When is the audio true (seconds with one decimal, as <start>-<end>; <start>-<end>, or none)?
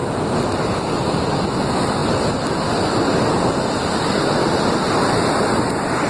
0.0-6.1